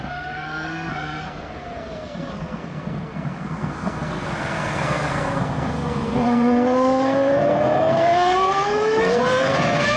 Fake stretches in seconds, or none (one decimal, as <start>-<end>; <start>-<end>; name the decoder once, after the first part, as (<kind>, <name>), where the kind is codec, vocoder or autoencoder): 0.0-10.0 (codec, SNAC)